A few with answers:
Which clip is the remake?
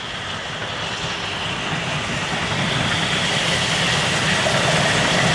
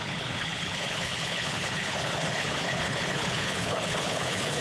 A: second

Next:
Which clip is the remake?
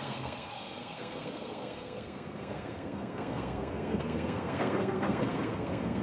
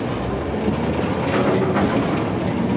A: first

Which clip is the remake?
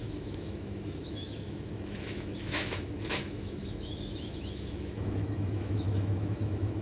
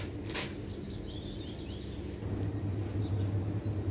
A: first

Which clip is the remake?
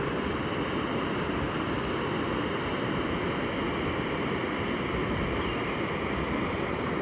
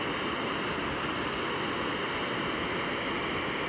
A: first